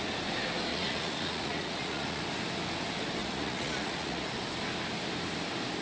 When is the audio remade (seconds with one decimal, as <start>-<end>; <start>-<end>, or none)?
0.7-2.2; 3.2-4.3